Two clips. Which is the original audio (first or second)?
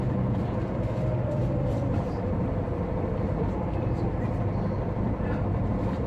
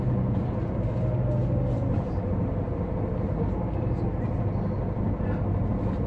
second